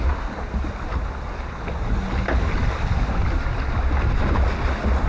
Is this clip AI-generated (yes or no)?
no